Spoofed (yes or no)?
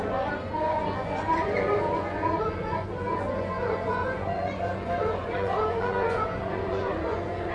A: yes